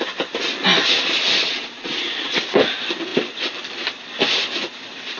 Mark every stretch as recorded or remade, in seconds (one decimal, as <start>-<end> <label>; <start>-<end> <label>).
0.0-1.4 recorded; 1.4-2.4 remade; 2.4-5.2 recorded